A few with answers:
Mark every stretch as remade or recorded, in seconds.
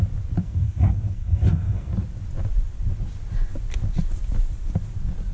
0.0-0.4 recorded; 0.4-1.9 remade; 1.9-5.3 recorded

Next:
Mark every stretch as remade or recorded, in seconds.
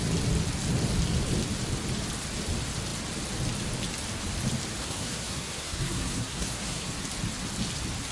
0.0-4.8 recorded; 4.8-6.9 remade; 6.9-8.1 recorded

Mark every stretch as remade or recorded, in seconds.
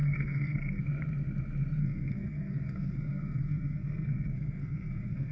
0.0-0.8 remade; 0.8-1.8 recorded; 1.8-5.3 remade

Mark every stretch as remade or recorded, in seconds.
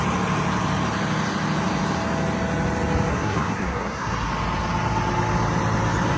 0.0-3.1 recorded; 3.1-4.3 remade; 4.3-6.2 recorded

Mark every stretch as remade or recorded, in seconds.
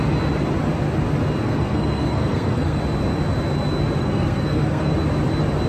0.0-1.4 recorded; 1.4-2.8 remade; 2.8-4.0 recorded; 4.0-4.9 remade; 4.9-5.7 recorded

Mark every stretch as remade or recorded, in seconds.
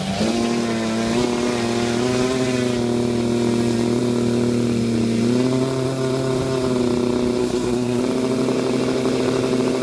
0.0-7.4 recorded; 7.4-8.0 remade; 8.0-9.8 recorded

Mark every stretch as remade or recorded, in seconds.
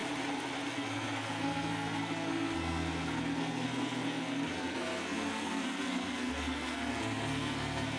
0.0-0.7 recorded; 0.7-8.0 remade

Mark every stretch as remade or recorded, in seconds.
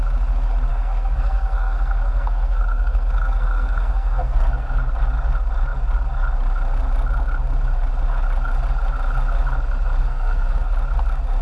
0.0-0.7 recorded; 0.7-4.8 remade; 4.8-10.0 recorded; 10.0-10.7 remade; 10.7-11.4 recorded